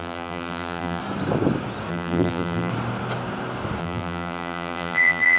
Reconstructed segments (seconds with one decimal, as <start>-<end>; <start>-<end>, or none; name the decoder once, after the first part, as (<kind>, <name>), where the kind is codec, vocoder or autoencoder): 0.0-1.0 (vocoder, BigVGAN v2); 1.9-2.7; 3.8-5.4